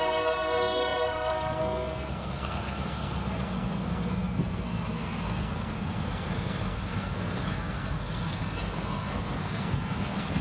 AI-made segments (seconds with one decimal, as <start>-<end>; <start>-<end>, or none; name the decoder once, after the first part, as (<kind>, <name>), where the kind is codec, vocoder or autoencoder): 0.0-10.4 (codec, SNAC)